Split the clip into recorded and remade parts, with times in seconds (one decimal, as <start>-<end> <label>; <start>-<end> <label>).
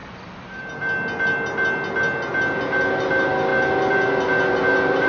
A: 0.0-0.6 remade; 0.6-5.1 recorded